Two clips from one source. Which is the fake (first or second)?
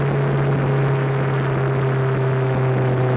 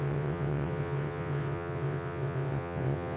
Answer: second